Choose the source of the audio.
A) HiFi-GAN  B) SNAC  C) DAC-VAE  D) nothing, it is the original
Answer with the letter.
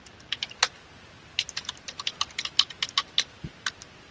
D